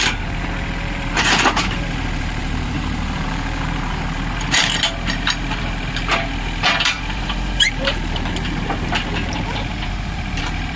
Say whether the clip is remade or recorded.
remade